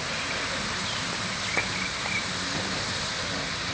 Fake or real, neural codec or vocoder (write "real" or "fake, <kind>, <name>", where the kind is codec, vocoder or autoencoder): real